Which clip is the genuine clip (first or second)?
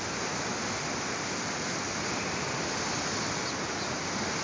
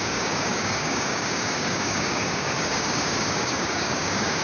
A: first